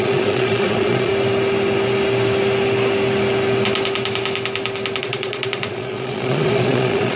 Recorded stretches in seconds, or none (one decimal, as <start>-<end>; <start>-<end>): 1.1-5.0